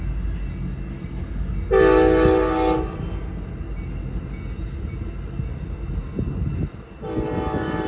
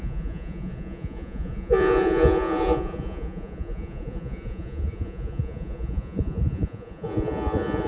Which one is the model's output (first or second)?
second